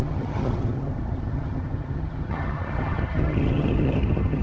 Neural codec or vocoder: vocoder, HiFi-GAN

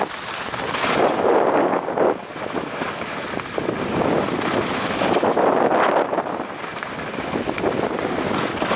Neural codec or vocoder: none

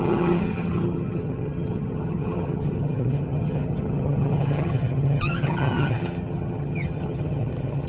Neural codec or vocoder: vocoder, HiFi-GAN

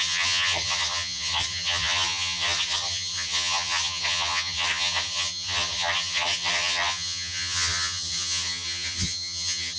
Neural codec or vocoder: vocoder, HiFi-GAN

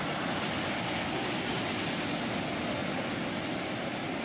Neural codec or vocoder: none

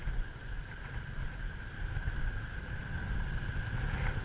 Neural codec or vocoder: none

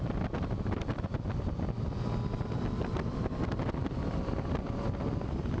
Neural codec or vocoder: none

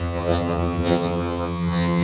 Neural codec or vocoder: vocoder, HiFi-GAN